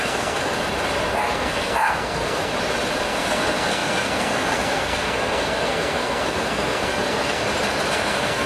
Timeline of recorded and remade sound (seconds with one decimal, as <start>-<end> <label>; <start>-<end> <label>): 0.0-0.5 remade; 0.5-1.1 recorded; 1.1-2.5 remade; 2.5-3.0 recorded; 3.0-7.4 remade; 7.4-7.9 recorded; 7.9-8.5 remade